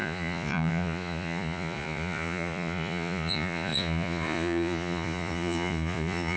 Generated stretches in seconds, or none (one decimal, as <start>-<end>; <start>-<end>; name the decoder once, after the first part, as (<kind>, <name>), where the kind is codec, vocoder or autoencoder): 0.0-6.4 (vocoder, Vocos)